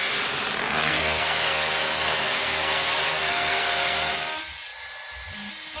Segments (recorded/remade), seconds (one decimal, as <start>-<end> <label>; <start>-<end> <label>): 0.0-0.6 recorded; 0.6-4.1 remade; 4.1-5.8 recorded